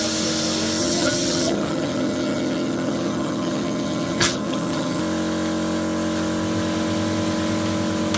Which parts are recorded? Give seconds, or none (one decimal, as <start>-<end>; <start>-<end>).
0.0-0.8; 5.0-8.2